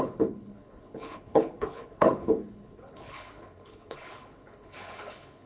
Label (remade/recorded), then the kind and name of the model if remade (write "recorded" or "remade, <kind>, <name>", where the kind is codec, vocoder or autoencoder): remade, codec, HILCodec